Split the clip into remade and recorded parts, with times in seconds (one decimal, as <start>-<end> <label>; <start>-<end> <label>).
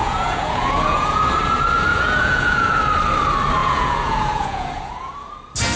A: 0.0-1.2 remade; 1.2-1.9 recorded; 1.9-2.8 remade; 2.8-3.6 recorded; 3.6-5.1 remade; 5.1-5.8 recorded